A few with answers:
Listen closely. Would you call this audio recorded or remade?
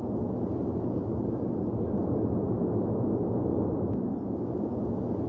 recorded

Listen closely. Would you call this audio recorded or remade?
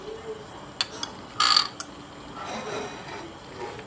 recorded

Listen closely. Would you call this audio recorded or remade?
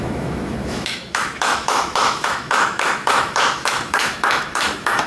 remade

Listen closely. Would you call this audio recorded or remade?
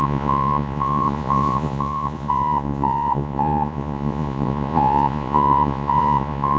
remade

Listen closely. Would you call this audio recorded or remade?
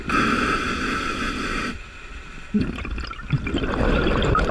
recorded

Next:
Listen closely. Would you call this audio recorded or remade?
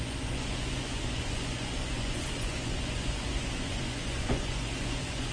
remade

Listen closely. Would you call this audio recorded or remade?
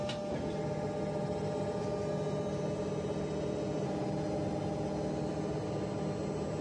recorded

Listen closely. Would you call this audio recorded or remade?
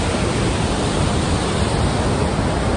recorded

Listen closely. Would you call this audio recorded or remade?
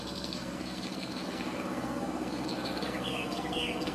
remade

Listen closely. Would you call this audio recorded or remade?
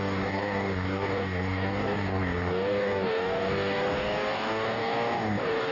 remade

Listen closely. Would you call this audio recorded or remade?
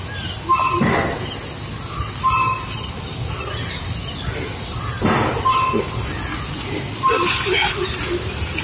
recorded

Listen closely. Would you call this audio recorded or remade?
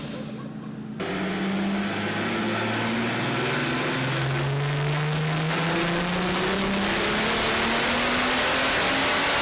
recorded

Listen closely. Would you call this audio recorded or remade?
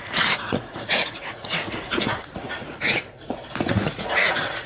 remade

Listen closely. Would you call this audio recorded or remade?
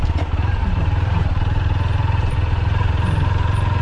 remade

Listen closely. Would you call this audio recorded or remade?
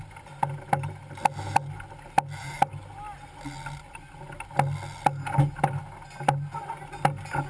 recorded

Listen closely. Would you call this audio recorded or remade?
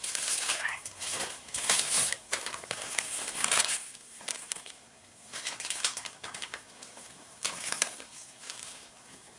remade